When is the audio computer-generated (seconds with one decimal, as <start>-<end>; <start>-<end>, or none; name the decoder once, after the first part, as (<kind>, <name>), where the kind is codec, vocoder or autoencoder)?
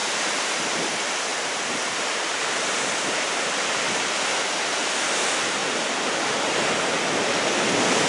0.0-0.8 (vocoder, BigVGAN v2); 1.3-3.8